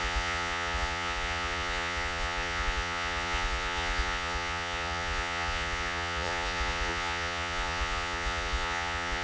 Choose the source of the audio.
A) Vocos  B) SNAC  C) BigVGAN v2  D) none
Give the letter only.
A